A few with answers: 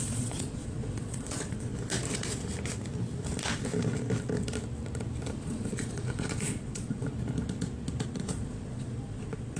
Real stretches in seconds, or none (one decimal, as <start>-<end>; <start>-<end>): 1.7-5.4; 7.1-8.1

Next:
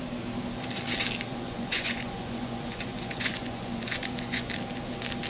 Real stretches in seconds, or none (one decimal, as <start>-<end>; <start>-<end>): 0.0-1.3; 4.5-5.3

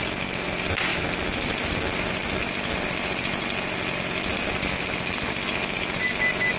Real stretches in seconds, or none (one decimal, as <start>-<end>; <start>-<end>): 0.0-6.6

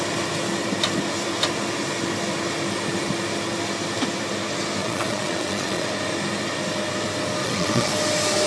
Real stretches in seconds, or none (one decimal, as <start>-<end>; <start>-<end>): 0.0-4.8; 5.9-7.4; 7.9-8.5

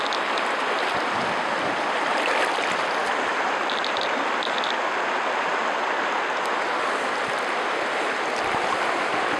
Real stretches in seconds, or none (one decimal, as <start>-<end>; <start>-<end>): 0.0-9.4

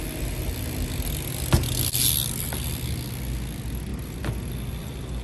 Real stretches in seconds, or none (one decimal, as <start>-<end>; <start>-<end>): 0.0-5.2

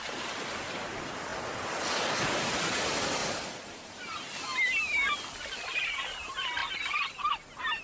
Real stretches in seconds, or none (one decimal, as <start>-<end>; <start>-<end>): 1.3-2.3; 3.2-4.8; 6.6-7.8

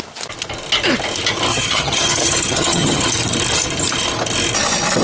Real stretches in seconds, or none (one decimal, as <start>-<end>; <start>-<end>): 0.0-1.5; 3.1-5.0